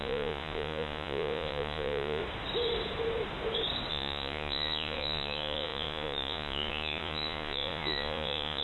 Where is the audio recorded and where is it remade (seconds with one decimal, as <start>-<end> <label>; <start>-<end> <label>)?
0.0-2.2 remade; 2.2-3.9 recorded; 3.9-8.6 remade